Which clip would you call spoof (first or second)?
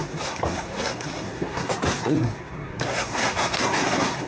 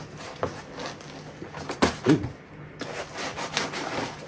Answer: first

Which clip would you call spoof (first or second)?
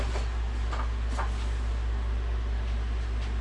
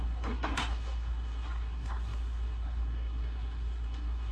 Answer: second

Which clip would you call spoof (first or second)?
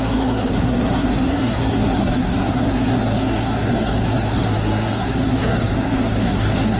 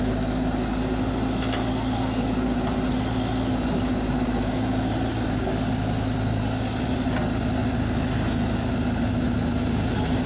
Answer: first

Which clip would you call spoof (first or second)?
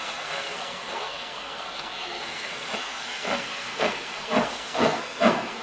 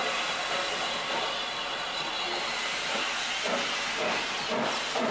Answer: first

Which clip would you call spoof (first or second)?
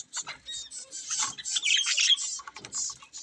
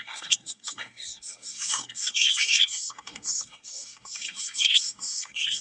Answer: second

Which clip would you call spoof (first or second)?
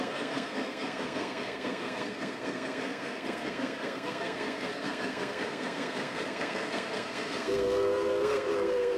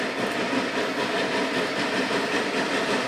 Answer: first